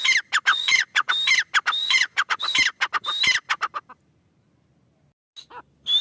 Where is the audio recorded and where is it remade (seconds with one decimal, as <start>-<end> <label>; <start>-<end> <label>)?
0.0-0.5 recorded; 0.5-1.1 remade; 1.1-1.8 recorded; 1.8-2.5 remade; 2.5-6.0 recorded